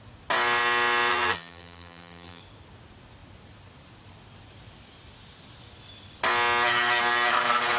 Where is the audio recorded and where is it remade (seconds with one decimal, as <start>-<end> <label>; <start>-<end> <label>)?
0.0-1.1 recorded; 1.1-2.4 remade; 2.4-7.8 recorded